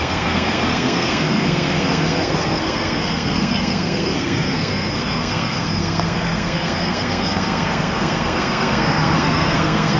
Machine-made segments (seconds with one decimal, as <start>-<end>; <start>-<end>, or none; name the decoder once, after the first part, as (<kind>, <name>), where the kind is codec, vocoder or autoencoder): 0.0-10.0 (codec, SNAC)